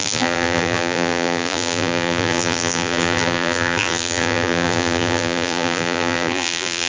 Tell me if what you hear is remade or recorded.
remade